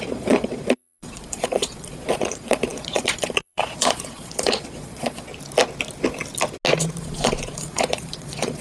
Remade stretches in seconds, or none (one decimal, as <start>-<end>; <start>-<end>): 0.0-5.3; 7.0-8.6